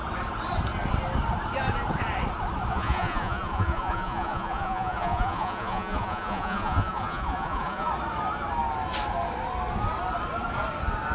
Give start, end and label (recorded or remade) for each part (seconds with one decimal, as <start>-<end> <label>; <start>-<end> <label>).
0.0-2.7 recorded; 2.7-7.9 remade; 7.9-11.1 recorded